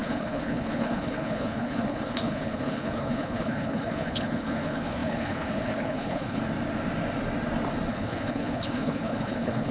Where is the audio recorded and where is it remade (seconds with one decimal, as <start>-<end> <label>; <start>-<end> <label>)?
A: 0.0-6.4 remade; 6.4-7.9 recorded; 7.9-9.7 remade